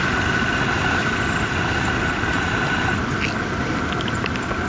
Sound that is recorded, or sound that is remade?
recorded